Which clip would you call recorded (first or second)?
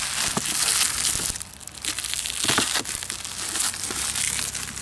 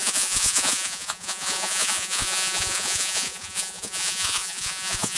first